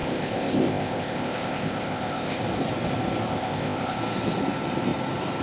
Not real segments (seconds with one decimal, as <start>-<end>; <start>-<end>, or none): 0.0-2.4; 3.3-4.0